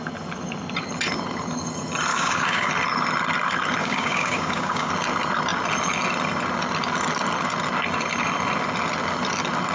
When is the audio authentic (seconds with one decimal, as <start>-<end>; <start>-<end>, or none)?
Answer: 0.0-2.1; 2.7-3.8; 4.9-9.7